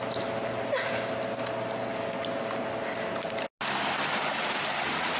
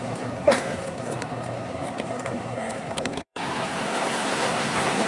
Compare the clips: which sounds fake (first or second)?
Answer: second